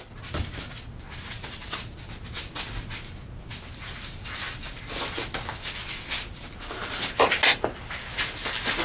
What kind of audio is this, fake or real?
real